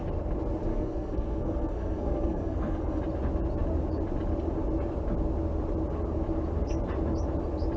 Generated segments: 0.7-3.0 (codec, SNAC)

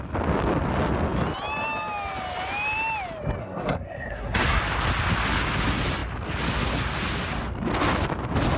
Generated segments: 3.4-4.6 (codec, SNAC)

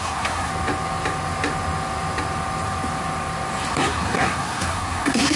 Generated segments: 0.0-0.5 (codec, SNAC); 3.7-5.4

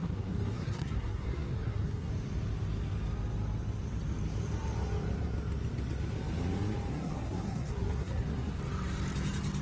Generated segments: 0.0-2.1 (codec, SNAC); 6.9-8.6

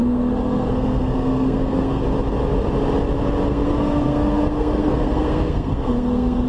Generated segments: 0.0-2.0 (codec, SNAC); 3.5-6.5

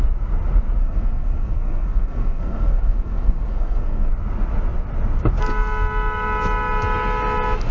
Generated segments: 0.8-4.1 (codec, SNAC)